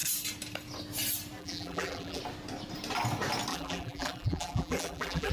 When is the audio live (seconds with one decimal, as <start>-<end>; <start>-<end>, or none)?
0.0-1.4; 2.2-3.5